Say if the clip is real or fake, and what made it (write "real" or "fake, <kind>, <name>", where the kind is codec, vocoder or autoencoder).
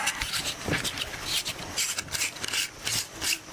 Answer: real